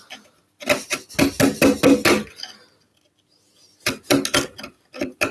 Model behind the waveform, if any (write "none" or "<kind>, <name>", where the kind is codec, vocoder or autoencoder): none